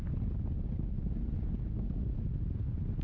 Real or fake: real